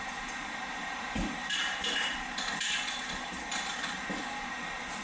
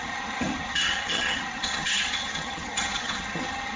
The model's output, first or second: second